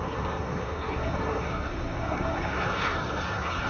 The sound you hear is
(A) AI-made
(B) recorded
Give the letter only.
A